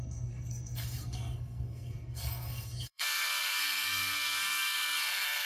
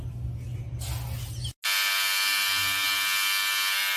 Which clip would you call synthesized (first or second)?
first